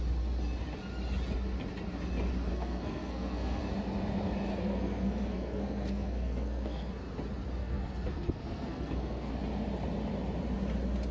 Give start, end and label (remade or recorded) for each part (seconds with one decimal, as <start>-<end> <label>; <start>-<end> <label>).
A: 0.0-2.5 recorded; 2.5-3.6 remade; 3.6-4.5 recorded; 4.5-6.9 remade; 6.9-7.6 recorded; 7.6-9.3 remade; 9.3-11.1 recorded